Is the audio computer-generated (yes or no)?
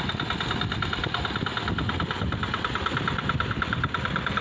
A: no